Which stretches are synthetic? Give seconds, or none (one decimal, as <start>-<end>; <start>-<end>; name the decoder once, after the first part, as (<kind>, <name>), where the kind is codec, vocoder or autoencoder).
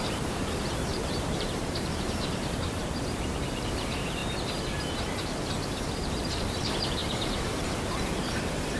0.0-4.2 (vocoder, BigVGAN v2); 5.8-8.8